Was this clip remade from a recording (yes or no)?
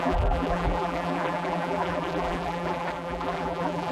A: yes